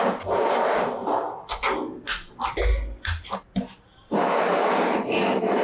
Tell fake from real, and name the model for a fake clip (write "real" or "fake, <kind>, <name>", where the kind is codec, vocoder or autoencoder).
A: real